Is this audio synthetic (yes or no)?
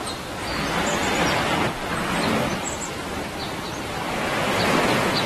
no